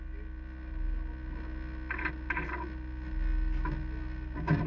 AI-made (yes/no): no